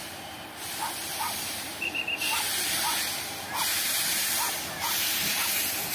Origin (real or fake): fake